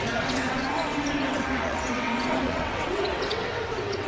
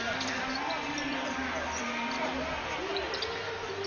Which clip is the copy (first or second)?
first